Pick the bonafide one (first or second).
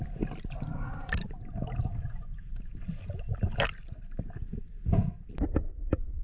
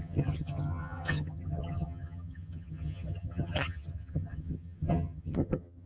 first